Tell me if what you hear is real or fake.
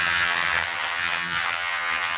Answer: fake